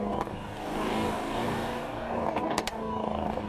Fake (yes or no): yes